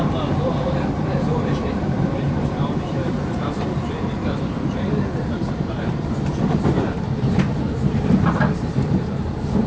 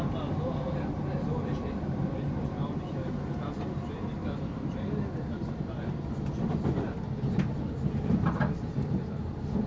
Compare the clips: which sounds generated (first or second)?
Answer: first